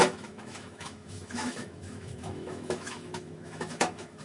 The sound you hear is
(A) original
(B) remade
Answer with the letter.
B